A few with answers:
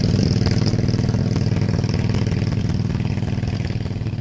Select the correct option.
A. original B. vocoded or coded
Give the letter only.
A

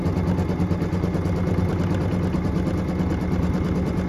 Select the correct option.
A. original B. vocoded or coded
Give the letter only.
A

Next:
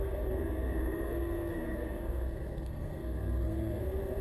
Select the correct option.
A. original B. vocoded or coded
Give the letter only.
B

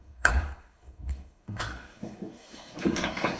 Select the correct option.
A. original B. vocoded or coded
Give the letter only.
B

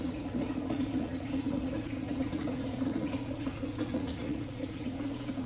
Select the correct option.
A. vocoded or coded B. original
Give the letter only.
A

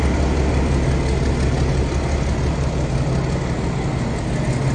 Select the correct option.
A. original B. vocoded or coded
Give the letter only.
A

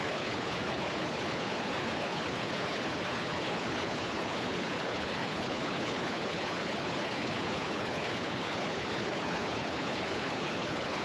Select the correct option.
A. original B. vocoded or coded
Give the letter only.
B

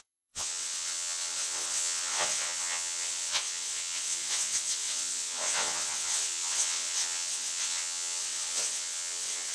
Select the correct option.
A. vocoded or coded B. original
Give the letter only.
A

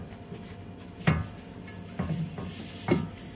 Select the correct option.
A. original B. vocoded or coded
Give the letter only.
A